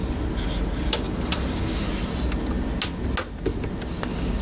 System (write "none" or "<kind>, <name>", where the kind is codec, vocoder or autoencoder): none